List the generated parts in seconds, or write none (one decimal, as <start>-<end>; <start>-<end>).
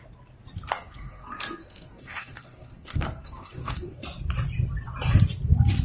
0.7-4.0